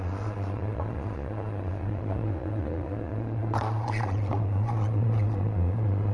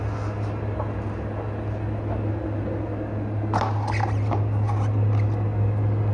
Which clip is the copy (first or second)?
first